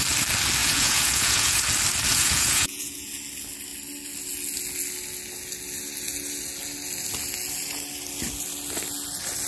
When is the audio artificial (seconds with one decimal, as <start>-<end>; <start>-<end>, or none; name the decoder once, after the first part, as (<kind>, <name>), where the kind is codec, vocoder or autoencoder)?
0.6-1.6 (vocoder, Vocos); 2.1-3.1